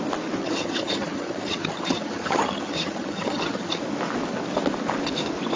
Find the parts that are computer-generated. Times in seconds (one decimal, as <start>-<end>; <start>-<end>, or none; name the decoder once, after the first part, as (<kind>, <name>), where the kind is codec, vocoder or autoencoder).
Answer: 0.4-3.8 (vocoder, HiFi-GAN)